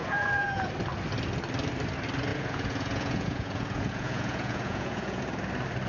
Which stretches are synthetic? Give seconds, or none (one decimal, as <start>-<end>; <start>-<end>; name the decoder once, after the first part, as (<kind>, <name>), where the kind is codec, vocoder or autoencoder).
0.0-0.7 (vocoder, Vocos); 2.3-5.2